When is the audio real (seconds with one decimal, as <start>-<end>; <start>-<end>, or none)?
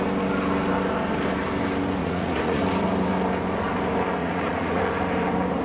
0.0-2.0; 2.6-4.2; 4.8-5.6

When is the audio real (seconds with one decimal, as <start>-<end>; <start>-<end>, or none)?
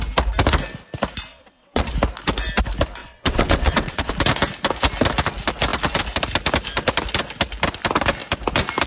0.0-1.3; 1.9-3.0; 4.1-8.9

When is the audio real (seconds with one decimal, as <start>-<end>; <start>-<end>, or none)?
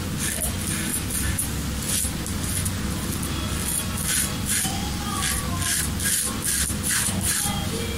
0.0-8.0